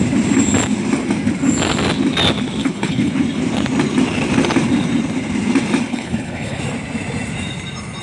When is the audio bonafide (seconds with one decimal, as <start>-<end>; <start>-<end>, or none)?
0.0-2.6; 3.1-5.9; 6.6-8.0